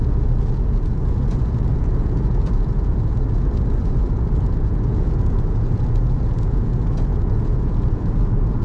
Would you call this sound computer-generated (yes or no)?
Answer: yes